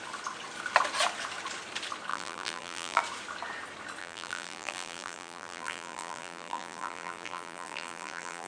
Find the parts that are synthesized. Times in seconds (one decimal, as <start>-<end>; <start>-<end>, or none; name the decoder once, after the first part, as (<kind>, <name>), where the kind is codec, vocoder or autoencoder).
2.1-3.0 (vocoder, BigVGAN v2); 4.0-8.5

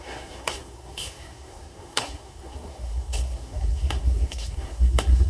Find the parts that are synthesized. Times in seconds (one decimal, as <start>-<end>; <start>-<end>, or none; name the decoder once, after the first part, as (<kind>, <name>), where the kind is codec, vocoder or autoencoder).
0.0-5.3 (codec, SNAC)